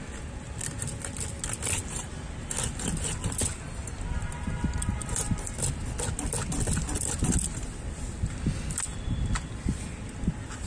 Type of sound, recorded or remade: recorded